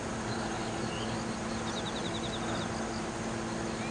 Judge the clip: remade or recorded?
recorded